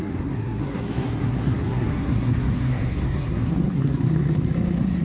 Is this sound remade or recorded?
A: remade